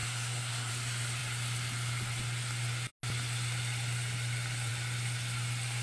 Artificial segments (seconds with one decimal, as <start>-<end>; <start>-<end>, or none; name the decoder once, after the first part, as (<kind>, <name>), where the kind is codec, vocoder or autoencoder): 0.0-0.7 (codec, SNAC)